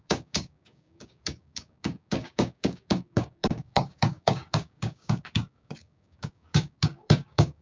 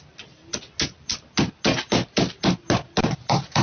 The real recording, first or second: second